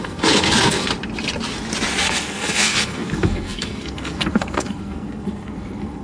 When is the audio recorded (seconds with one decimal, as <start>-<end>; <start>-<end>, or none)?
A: 0.9-2.0